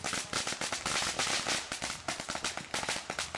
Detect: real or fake real